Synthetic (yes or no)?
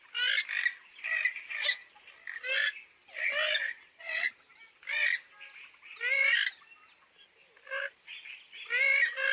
no